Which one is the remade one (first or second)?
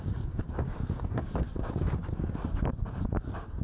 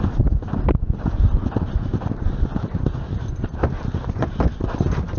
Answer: first